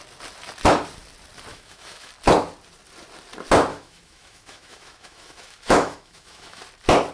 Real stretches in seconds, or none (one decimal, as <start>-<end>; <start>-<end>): 0.0-1.5; 2.1-3.7; 6.6-7.1